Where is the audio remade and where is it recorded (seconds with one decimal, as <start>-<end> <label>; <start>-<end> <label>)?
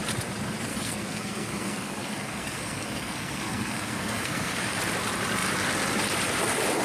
0.0-0.7 recorded; 0.7-4.8 remade; 4.8-6.8 recorded